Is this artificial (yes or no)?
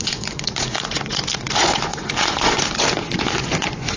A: yes